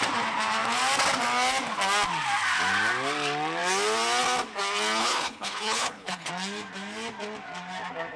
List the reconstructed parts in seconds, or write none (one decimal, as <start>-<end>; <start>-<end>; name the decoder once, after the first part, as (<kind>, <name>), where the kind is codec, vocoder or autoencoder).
5.0-6.3 (codec, HILCodec)